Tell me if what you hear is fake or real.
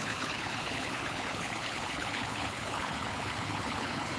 fake